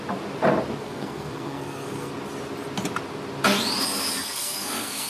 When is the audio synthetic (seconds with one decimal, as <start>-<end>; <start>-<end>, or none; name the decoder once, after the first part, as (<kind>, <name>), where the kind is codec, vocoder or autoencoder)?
0.8-2.1 (codec, SNAC); 4.2-5.1